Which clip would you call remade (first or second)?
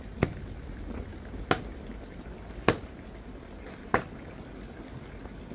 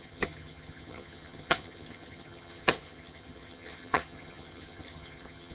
second